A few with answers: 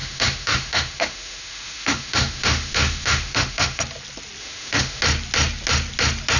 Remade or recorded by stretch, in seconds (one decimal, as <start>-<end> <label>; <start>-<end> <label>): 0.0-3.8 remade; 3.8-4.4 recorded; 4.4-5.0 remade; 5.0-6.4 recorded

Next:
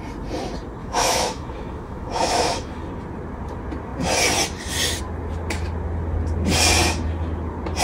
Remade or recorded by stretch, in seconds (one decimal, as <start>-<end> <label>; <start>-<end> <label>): 0.0-0.8 recorded; 0.8-2.8 remade; 2.8-7.8 recorded

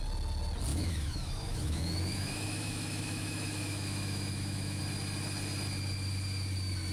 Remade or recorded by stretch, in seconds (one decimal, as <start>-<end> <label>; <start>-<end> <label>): 0.0-0.7 recorded; 0.7-4.8 remade; 4.8-6.9 recorded

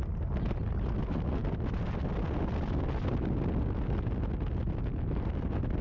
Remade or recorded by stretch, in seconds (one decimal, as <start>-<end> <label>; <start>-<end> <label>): 0.0-5.8 recorded